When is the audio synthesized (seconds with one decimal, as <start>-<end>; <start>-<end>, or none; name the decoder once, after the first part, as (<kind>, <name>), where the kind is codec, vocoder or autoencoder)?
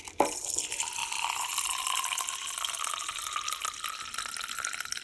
none